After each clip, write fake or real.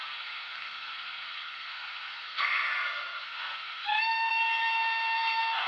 fake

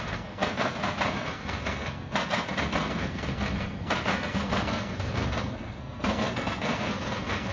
fake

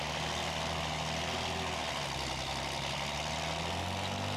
real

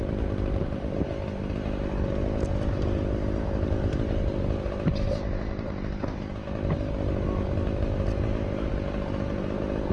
real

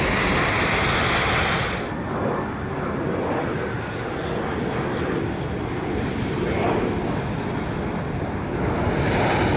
real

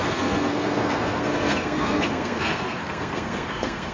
fake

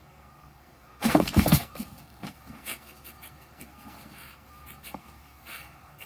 fake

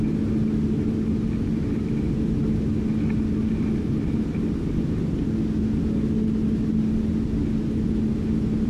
real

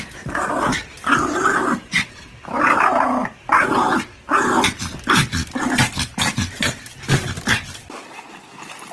real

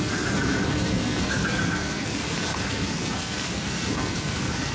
fake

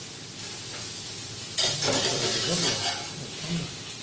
real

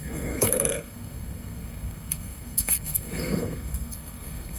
fake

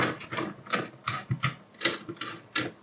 real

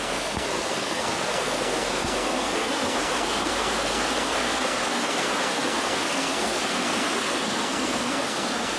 fake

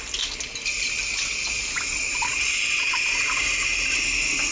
real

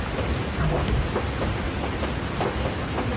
real